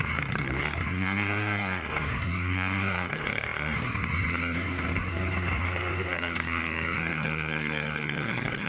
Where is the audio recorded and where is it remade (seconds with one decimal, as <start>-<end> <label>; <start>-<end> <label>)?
0.0-8.7 remade